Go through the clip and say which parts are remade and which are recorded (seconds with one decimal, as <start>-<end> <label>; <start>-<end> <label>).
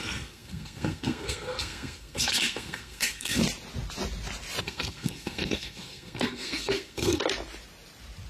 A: 0.0-3.4 remade; 3.4-4.6 recorded; 4.6-7.2 remade; 7.2-8.3 recorded